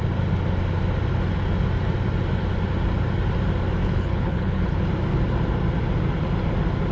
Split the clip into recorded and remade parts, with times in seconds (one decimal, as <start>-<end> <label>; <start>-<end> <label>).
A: 0.0-3.8 recorded; 3.8-4.8 remade; 4.8-6.9 recorded